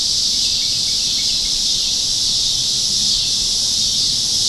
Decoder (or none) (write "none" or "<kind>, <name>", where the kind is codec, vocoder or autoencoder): vocoder, BigVGAN v2